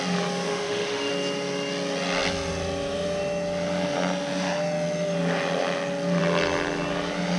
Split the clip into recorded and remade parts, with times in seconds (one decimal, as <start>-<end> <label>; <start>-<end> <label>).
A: 0.0-0.5 recorded; 0.5-1.1 remade; 1.1-7.4 recorded